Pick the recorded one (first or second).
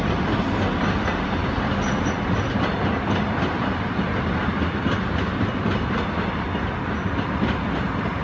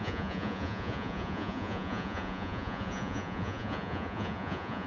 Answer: first